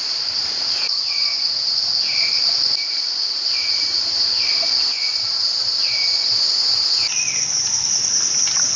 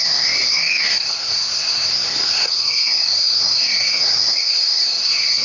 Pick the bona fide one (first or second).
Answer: first